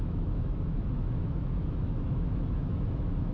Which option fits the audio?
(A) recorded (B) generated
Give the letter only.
B